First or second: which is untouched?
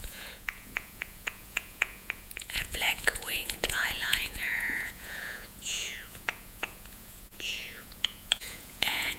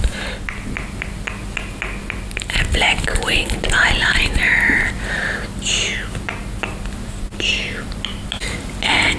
second